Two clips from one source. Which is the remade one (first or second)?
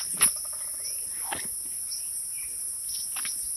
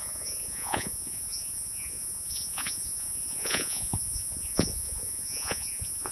second